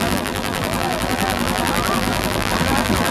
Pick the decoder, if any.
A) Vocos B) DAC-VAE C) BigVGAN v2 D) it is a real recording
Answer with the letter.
C